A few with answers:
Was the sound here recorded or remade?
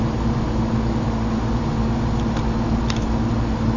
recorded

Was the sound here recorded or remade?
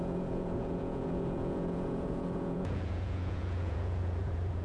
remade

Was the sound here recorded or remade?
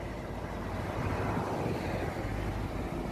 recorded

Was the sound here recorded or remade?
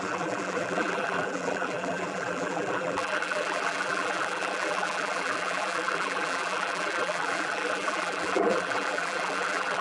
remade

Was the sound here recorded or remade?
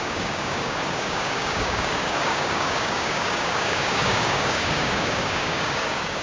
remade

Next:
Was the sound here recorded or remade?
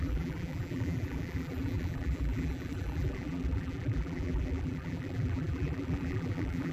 remade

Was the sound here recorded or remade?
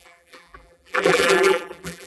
remade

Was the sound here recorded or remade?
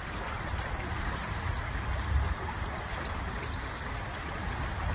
remade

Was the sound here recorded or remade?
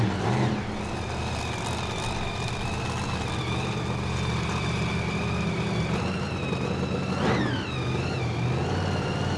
recorded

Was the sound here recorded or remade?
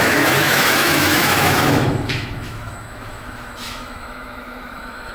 remade